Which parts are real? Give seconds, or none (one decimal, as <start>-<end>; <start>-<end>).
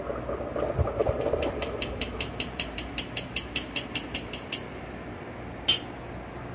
0.0-1.0; 4.5-6.5